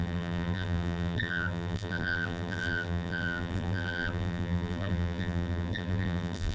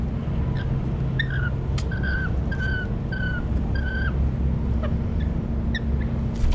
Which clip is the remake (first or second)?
first